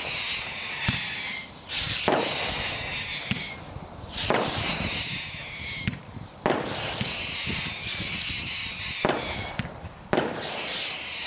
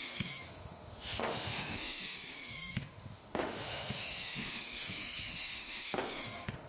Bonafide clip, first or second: first